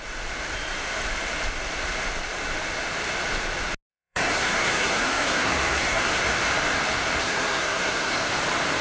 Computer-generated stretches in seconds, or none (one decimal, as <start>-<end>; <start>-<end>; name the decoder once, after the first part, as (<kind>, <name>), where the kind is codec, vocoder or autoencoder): 3.9-6.2 (codec, SNAC); 7.2-8.3